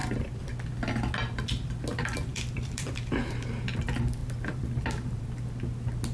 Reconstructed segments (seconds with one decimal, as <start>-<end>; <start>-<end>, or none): 0.0-0.5; 2.3-3.4; 4.2-5.2